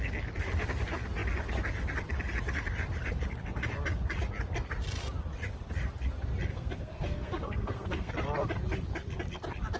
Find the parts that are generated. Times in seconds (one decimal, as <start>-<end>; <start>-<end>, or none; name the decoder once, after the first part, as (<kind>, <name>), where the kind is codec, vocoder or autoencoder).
6.5-8.1 (codec, SNAC)